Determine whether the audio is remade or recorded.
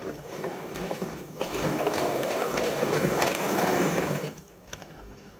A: remade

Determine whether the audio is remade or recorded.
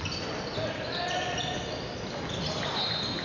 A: recorded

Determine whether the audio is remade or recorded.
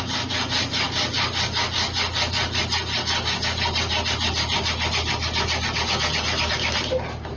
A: recorded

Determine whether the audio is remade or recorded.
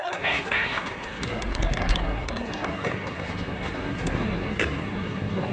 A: remade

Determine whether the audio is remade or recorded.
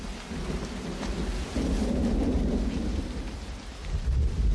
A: recorded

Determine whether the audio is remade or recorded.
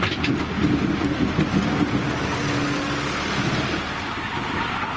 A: recorded